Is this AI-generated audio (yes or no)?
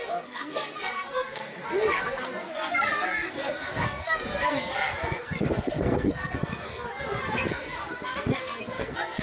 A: yes